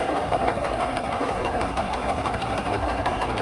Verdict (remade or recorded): remade